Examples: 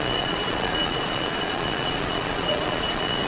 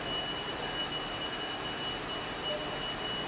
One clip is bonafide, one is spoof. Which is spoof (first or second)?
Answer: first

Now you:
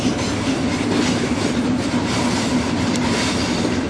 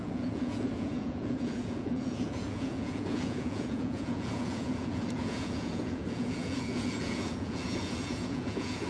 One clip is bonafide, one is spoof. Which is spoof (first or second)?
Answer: second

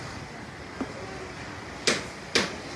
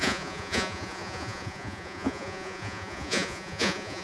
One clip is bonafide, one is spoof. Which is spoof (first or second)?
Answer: second